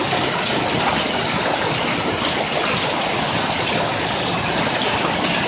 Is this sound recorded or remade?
recorded